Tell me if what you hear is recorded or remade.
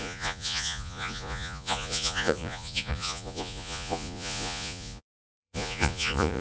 remade